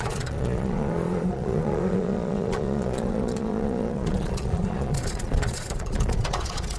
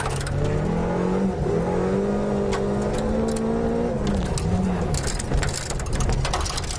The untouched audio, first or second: second